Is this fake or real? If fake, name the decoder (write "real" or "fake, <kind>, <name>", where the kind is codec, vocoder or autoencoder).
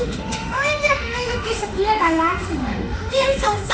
fake, autoencoder, DAC-VAE